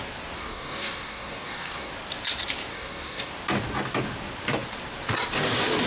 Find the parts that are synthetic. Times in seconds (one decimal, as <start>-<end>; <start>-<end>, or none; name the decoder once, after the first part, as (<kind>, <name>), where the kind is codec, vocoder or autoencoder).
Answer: 0.4-1.9 (codec, DAC); 2.7-3.3